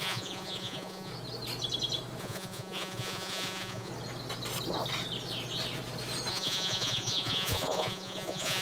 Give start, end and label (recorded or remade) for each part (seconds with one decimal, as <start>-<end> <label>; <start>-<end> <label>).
0.0-1.1 remade; 1.1-2.2 recorded; 2.2-3.9 remade; 3.9-6.3 recorded; 6.3-8.6 remade